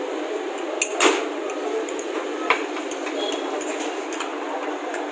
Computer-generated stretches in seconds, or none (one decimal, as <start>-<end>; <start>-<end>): 4.3-5.1

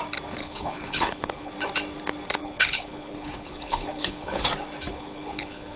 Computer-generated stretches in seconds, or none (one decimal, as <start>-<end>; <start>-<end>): 0.4-1.5; 2.4-4.4; 4.9-5.8